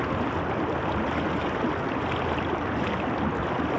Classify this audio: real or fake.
real